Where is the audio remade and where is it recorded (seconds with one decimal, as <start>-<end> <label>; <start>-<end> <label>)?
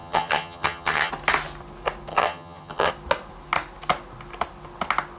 0.0-1.1 remade; 1.1-2.1 recorded; 2.1-2.9 remade; 2.9-5.2 recorded